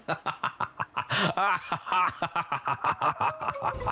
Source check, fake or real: fake